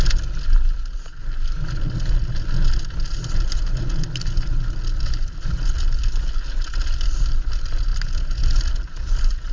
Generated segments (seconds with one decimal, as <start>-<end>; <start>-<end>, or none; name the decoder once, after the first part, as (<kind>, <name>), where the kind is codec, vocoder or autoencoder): none